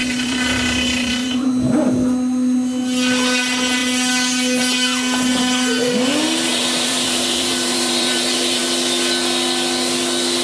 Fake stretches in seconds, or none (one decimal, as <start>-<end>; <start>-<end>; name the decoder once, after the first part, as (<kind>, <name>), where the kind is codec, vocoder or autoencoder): 0.0-1.5 (vocoder, BigVGAN v2); 6.5-8.6